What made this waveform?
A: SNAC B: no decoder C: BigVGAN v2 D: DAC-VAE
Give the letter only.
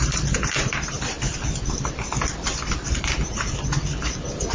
B